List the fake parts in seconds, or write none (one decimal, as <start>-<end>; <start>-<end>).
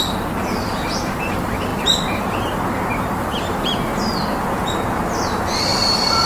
0.0-4.1; 5.2-5.7